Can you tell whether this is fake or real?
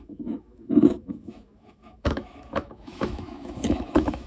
fake